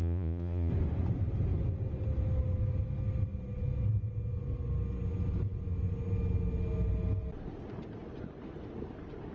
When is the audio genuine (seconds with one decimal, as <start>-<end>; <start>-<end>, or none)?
0.7-9.3

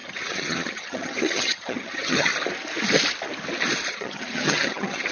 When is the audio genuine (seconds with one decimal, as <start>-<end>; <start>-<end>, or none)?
2.3-3.9

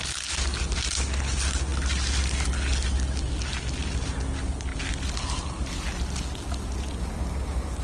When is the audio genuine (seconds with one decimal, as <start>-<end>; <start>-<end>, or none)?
0.0-7.8

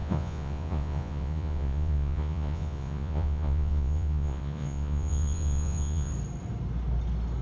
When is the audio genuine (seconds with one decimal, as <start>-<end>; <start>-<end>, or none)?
6.1-7.4

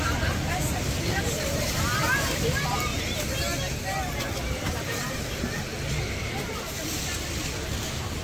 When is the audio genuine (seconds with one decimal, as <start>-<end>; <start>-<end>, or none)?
2.9-4.1; 5.7-6.6